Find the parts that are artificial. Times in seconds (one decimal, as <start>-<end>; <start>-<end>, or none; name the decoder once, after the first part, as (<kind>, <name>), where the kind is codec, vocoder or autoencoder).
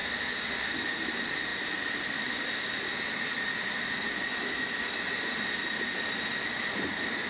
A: none